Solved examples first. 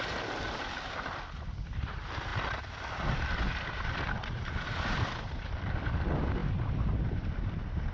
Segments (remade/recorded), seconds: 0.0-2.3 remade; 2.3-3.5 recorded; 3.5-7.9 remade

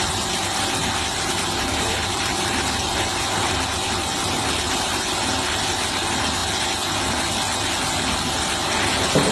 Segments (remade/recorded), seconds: 0.0-1.7 recorded; 1.7-5.3 remade; 5.3-9.3 recorded

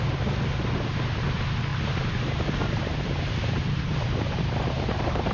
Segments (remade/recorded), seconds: 0.0-1.7 recorded; 1.7-5.3 remade

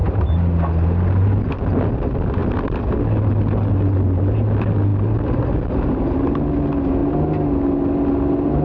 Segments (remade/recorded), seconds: 0.0-8.6 recorded